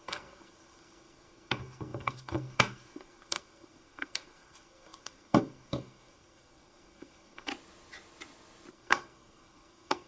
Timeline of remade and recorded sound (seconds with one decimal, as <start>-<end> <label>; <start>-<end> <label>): 0.0-7.5 remade; 7.5-8.7 recorded; 8.7-10.1 remade